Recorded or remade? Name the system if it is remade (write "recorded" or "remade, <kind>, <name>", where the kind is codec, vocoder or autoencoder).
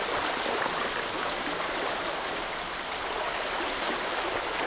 recorded